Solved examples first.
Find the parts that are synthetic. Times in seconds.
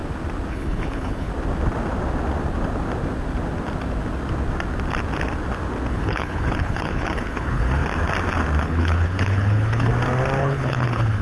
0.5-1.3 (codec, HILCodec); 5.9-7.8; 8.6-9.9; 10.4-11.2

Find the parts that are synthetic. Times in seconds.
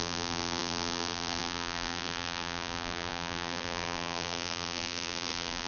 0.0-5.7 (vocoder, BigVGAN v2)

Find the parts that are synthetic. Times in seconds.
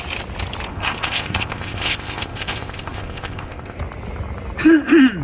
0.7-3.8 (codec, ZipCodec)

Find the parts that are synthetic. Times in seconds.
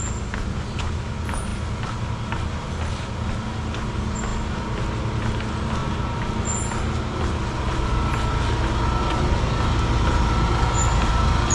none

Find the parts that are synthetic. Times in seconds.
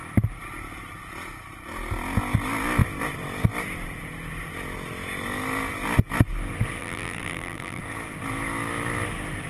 6.8-7.8 (vocoder, BigVGAN v2)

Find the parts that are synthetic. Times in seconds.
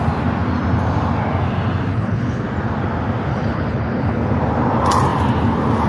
1.9-2.4 (codec, HILCodec); 3.3-4.3